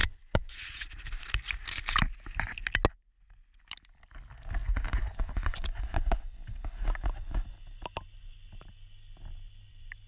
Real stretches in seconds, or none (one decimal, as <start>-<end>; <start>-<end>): 0.9-4.6; 6.2-10.1